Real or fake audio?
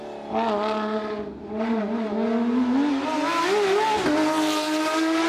real